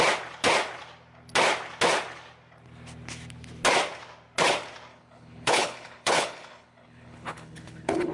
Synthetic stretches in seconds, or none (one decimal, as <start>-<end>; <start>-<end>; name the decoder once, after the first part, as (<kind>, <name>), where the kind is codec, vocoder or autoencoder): 4.9-8.1 (codec, HILCodec)